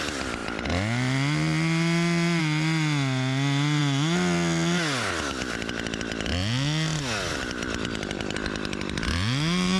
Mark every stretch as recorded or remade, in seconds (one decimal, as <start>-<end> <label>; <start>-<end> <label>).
0.0-9.8 recorded